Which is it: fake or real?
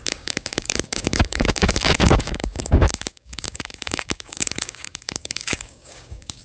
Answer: fake